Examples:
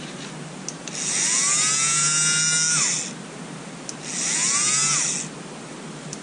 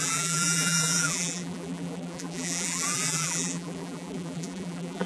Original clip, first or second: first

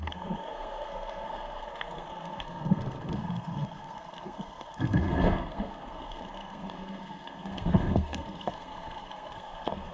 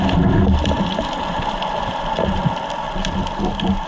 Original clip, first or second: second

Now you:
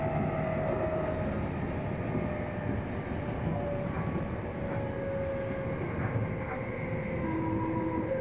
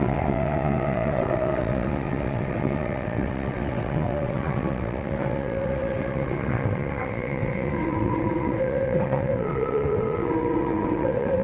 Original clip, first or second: first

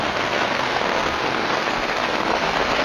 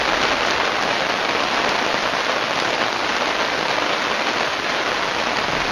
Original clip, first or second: second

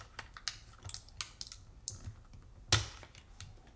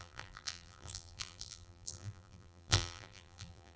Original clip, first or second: first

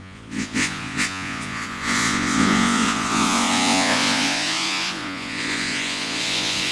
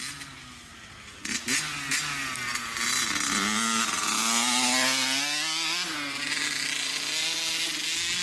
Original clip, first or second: second